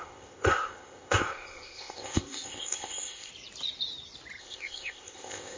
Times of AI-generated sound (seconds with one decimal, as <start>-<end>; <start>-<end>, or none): 0.0-3.3; 4.4-5.6

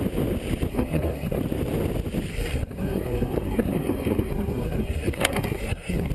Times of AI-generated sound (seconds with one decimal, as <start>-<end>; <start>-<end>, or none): 0.7-1.4; 2.3-6.1

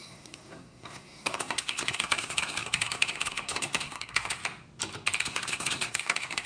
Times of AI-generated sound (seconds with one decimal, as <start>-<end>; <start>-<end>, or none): 0.0-4.4; 5.2-6.5

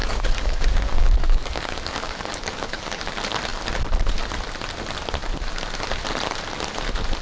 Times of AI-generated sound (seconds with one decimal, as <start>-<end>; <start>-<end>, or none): 0.0-3.1